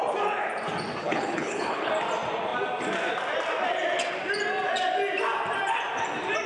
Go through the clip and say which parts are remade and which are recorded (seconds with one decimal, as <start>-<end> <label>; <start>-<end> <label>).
0.0-1.0 recorded; 1.0-1.9 remade; 1.9-6.5 recorded